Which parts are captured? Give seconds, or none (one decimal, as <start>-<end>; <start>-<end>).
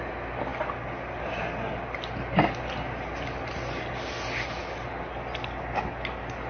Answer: 0.0-6.5